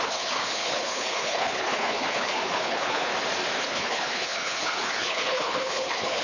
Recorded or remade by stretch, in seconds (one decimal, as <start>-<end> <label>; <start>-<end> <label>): 0.0-3.1 remade; 3.1-3.6 recorded; 3.6-6.2 remade